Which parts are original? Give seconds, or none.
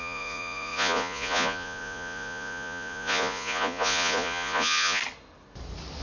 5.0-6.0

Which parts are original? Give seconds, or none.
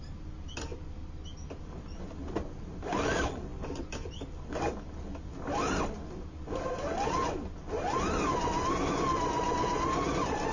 0.0-10.5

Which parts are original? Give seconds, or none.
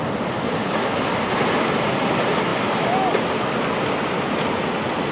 0.0-5.1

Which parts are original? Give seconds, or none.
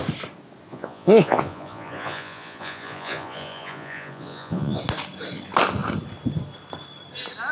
0.0-0.7; 4.8-7.5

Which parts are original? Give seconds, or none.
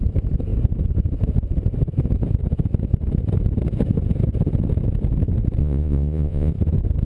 0.0-5.6; 6.5-7.0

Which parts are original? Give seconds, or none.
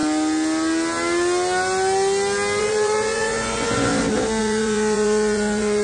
0.0-2.6; 3.9-4.4